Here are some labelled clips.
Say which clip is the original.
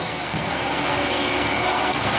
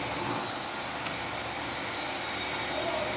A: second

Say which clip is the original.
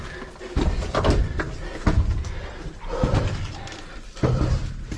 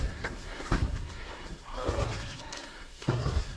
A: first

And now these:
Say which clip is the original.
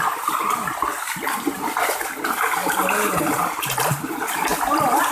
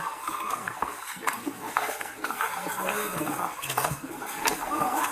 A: first